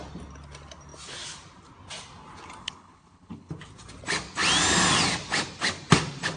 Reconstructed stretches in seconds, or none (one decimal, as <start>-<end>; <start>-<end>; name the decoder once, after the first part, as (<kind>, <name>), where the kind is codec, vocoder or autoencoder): 2.6-3.5 (codec, HILCodec)